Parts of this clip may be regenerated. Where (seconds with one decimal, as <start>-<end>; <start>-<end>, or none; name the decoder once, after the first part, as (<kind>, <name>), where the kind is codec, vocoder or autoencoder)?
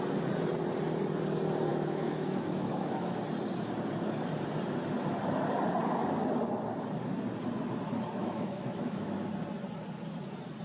1.7-3.2 (autoencoder, DAC-VAE); 8.2-9.3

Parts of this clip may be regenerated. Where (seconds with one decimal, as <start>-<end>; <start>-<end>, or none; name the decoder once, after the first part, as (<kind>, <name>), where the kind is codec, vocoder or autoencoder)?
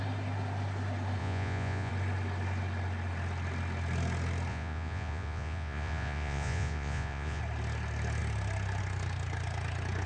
1.2-1.9 (vocoder, Vocos); 4.5-7.4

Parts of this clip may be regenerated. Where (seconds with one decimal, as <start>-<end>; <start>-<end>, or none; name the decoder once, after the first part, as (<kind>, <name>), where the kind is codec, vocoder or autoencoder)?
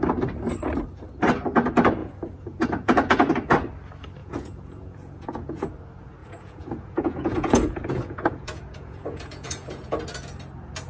2.0-3.3 (vocoder, Vocos); 4.2-5.7; 6.2-9.9